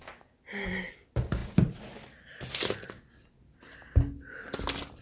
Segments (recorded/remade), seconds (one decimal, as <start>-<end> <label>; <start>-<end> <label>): 0.0-5.0 recorded